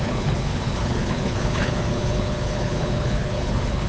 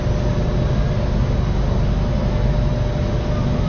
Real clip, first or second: second